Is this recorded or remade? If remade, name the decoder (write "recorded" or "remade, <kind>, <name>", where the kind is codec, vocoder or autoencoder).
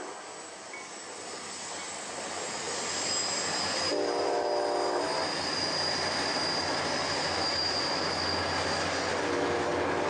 recorded